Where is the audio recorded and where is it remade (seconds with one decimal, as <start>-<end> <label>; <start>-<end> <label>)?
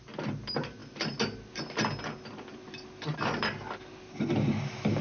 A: 0.0-5.0 recorded